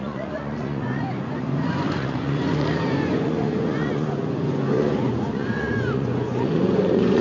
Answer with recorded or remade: remade